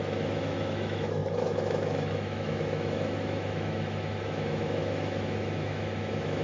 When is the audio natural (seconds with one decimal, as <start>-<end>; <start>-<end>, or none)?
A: none